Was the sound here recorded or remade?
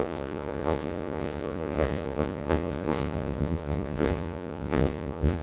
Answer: remade